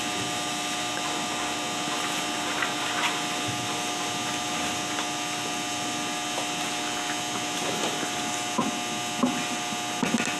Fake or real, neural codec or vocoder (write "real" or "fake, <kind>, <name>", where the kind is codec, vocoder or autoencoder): real